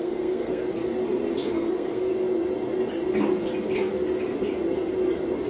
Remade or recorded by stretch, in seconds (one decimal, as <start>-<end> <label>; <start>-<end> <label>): 0.0-0.6 remade; 0.6-1.5 recorded; 1.5-2.1 remade; 2.1-5.5 recorded